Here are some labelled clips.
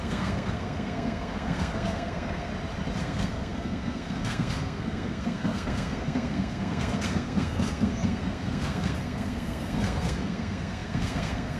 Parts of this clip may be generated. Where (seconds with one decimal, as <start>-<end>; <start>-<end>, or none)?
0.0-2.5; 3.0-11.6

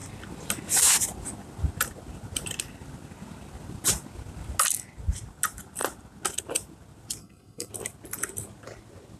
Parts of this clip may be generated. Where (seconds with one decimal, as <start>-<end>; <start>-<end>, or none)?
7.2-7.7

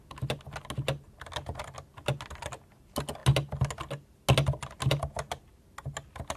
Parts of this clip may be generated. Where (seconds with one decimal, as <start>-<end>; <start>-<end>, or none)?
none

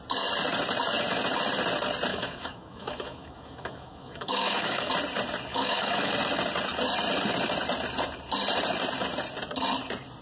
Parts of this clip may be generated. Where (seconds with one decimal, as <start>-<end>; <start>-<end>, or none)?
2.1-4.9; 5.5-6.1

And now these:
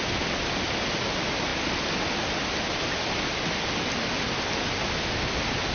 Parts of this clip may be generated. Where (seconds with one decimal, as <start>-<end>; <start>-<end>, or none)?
none